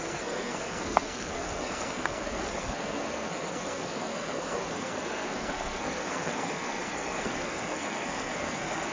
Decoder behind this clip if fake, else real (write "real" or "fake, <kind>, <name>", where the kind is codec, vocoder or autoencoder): fake, codec, SNAC